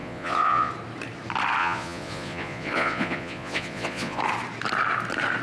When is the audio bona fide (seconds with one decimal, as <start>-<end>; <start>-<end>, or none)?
0.7-1.6; 4.2-5.4